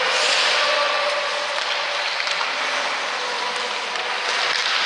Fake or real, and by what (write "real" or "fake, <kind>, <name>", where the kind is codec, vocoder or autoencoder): real